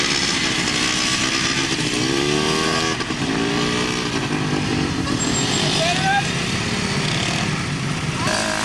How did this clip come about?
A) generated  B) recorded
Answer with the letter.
B